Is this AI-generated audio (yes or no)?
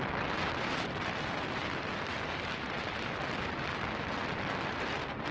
no